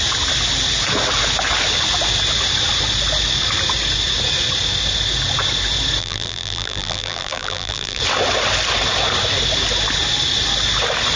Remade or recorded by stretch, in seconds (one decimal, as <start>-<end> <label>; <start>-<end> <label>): 0.0-6.0 recorded; 6.0-8.0 remade; 8.0-11.2 recorded